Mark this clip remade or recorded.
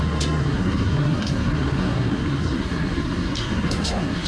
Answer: remade